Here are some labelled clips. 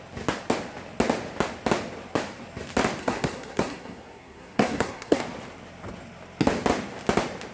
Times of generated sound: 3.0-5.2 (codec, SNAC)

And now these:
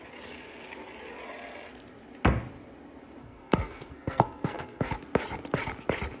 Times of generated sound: 3.2-4.9 (codec, SNAC)

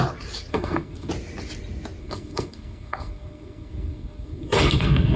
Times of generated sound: 0.5-1.1 (codec, SNAC); 2.0-5.2

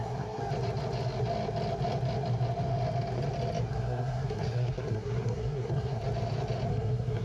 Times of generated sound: 0.0-0.4 (codec, SNAC); 3.7-6.0; 6.7-7.2

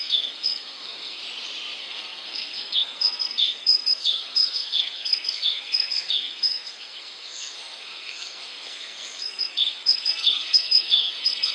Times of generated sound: 0.0-1.2 (codec, SNAC); 1.8-11.5